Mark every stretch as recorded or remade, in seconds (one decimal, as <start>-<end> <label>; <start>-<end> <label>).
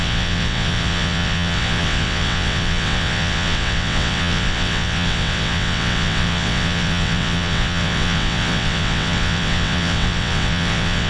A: 0.0-11.1 remade